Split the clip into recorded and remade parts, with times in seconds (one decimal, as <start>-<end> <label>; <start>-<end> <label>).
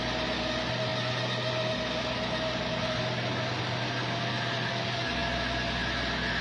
0.0-6.4 recorded